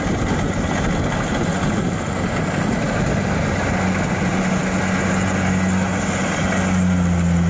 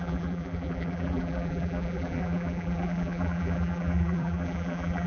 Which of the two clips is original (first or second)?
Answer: first